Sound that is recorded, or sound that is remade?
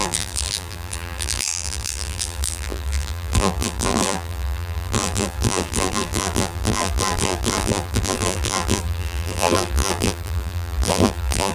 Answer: remade